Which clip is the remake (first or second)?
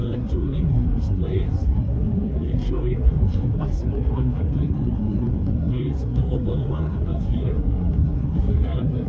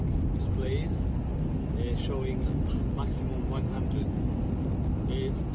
first